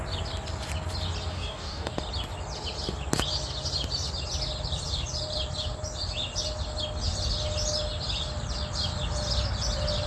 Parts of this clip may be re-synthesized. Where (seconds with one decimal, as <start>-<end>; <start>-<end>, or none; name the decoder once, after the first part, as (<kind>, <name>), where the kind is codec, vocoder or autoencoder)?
1.3-2.0 (codec, DAC)